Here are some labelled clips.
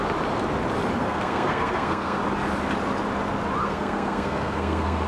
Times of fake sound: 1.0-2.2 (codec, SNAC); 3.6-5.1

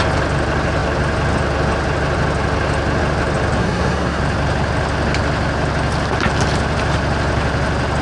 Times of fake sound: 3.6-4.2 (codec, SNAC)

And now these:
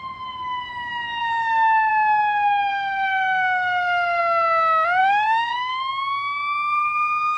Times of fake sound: 1.2-1.9 (codec, SNAC); 2.7-4.2; 5.0-5.8